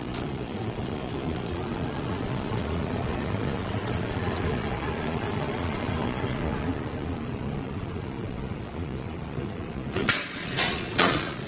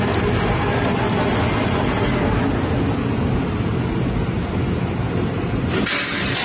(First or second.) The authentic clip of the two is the second